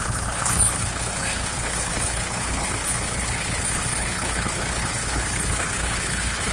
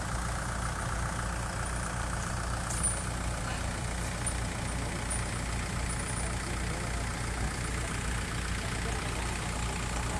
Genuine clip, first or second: second